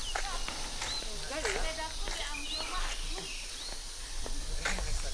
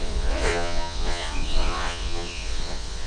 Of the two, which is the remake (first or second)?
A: second